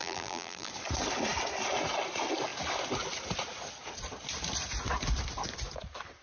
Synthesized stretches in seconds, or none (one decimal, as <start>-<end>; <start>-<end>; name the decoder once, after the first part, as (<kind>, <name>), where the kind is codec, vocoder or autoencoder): 0.0-0.7 (vocoder, BigVGAN v2)